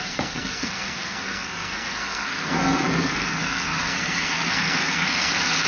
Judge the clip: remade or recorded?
remade